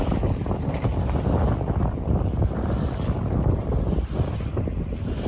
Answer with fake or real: real